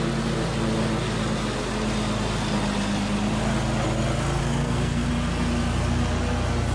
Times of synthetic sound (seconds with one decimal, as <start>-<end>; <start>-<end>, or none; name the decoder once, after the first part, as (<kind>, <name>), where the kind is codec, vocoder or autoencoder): 4.4-5.1 (codec, SNAC)